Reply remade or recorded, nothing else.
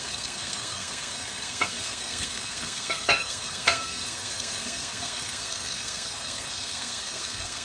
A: remade